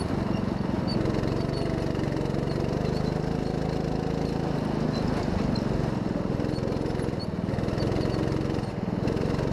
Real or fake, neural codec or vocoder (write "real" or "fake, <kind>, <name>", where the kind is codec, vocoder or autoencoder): real